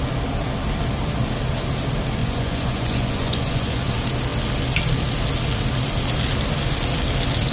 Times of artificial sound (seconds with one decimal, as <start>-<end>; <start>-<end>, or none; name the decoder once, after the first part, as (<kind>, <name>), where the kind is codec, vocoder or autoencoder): 2.2-3.9 (vocoder, Vocos)